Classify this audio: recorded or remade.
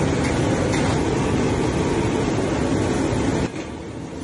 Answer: recorded